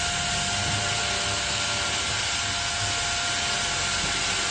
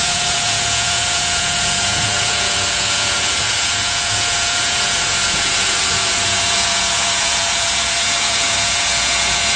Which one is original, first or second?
first